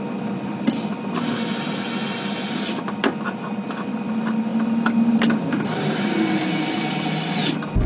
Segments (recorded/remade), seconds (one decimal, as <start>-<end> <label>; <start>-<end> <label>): 0.0-7.9 recorded